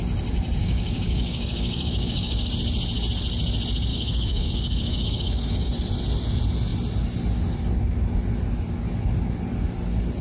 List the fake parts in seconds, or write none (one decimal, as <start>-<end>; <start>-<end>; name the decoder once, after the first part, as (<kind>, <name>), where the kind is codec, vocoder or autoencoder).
0.6-2.5 (codec, DAC); 3.9-5.7